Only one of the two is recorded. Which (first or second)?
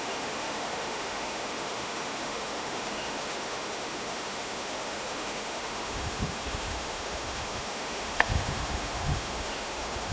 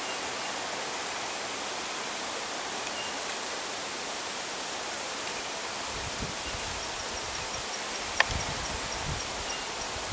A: second